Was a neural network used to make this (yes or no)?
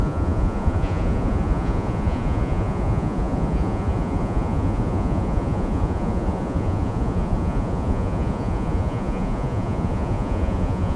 yes